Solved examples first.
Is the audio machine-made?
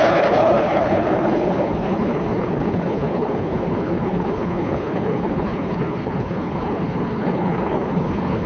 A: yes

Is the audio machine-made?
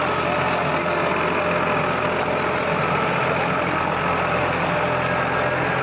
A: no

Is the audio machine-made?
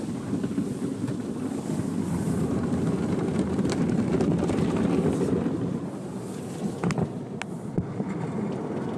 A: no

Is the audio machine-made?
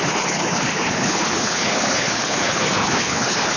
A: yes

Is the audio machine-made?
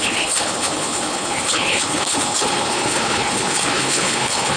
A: yes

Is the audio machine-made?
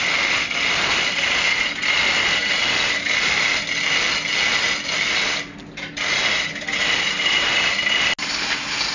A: no